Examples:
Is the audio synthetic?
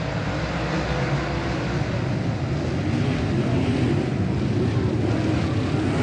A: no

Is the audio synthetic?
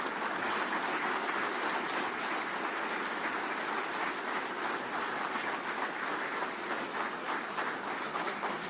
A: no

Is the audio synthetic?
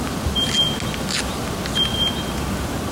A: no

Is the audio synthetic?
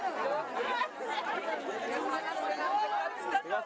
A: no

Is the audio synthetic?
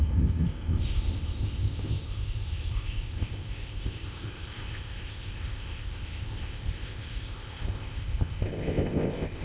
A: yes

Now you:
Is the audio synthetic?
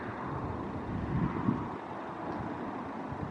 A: no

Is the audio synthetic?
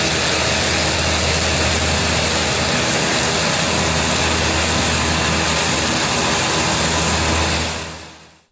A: no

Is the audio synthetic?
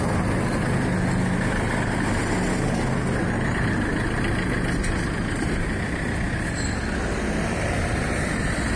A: no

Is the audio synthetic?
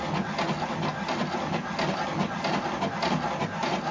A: no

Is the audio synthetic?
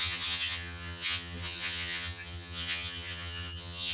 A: yes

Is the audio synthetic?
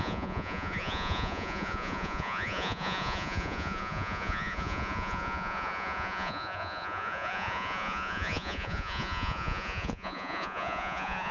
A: yes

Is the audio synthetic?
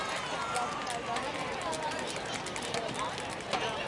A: no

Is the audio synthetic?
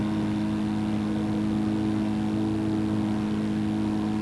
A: no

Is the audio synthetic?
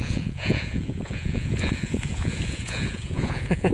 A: yes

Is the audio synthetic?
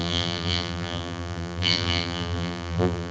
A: yes